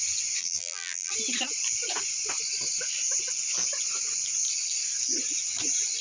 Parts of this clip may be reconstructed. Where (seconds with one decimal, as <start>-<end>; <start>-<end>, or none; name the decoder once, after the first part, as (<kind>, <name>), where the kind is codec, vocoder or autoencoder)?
0.4-1.1 (vocoder, BigVGAN v2)